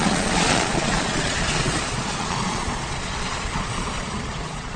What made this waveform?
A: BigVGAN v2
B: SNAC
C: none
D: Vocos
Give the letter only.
D